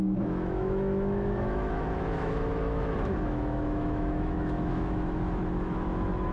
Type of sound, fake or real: fake